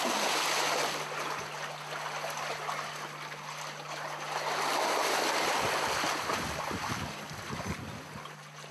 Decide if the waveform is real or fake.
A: real